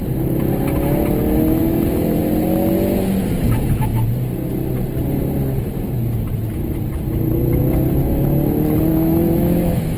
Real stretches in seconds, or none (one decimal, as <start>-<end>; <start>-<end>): 0.0-1.6; 2.2-8.9